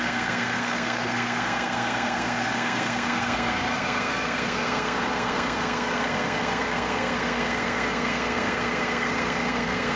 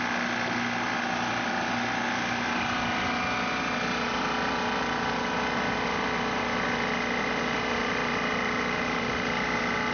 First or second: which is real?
second